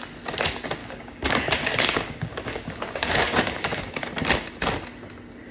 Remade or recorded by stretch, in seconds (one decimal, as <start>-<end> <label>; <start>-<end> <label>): 0.0-0.8 recorded; 0.8-4.1 remade; 4.1-5.5 recorded